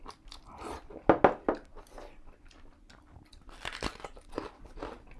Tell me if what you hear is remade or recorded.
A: recorded